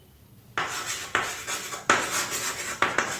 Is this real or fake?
real